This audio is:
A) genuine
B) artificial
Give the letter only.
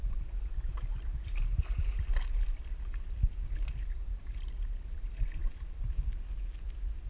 A